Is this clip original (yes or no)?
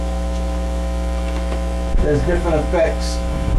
no